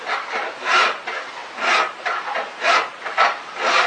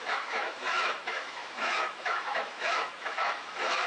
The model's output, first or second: second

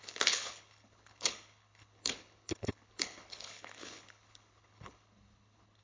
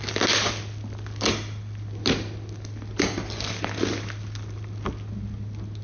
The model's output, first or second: first